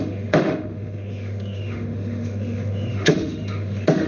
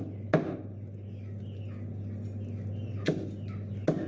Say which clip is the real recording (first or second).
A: second